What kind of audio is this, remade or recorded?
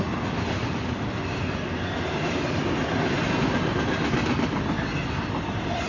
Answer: recorded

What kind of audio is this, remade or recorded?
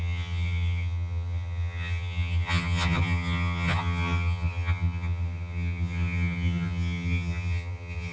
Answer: remade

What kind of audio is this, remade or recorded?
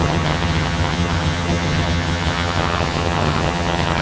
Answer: remade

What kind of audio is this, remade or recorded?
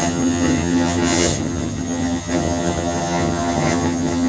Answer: remade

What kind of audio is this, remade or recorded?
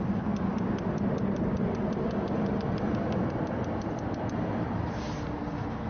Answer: recorded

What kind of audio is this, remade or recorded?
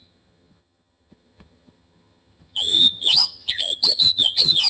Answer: remade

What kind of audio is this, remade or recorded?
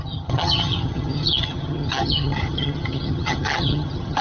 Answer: remade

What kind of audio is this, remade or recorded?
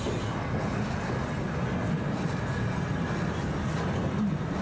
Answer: recorded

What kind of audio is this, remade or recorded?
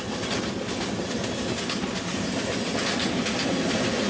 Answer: recorded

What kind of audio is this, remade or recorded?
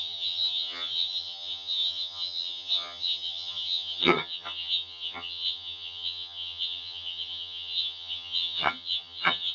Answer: remade